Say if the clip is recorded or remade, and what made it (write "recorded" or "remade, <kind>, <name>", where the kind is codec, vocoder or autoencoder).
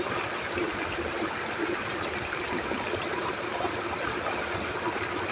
recorded